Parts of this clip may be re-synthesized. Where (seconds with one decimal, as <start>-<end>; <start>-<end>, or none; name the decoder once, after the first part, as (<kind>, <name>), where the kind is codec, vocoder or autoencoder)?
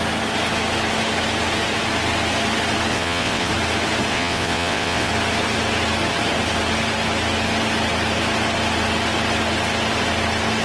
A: 2.9-3.5 (vocoder, WaveNeXt); 4.1-5.1